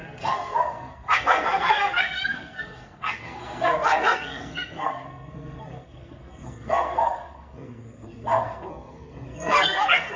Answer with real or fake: fake